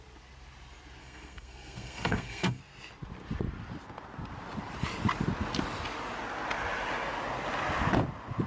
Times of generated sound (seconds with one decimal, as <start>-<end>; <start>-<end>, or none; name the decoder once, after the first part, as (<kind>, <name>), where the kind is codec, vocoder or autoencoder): 1.0-2.6 (codec, SNAC)